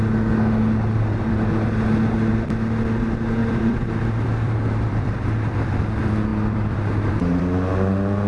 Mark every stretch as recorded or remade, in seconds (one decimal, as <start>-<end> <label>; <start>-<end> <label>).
0.0-3.4 recorded; 3.4-5.8 remade; 5.8-6.3 recorded; 6.3-7.4 remade; 7.4-8.3 recorded